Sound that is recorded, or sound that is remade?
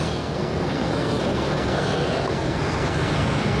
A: remade